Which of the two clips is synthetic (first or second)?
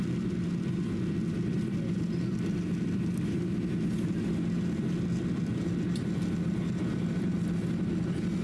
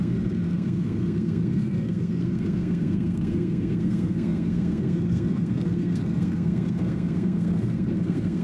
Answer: second